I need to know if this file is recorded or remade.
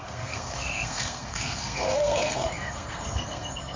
remade